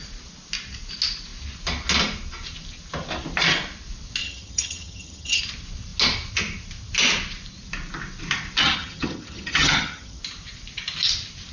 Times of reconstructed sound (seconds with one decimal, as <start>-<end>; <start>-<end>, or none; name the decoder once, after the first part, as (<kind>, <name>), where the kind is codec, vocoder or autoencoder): 4.2-5.4 (vocoder, HiFi-GAN); 8.6-10.2